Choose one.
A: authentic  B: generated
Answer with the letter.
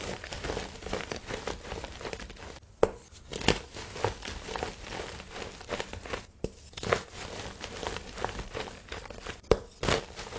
A